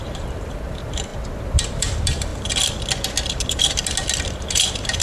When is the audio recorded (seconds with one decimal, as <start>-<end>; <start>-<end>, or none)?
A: 1.1-1.8; 2.3-4.3